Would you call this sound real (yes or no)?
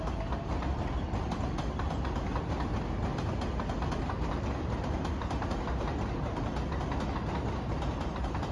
yes